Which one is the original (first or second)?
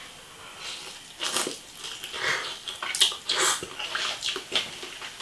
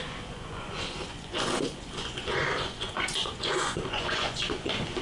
first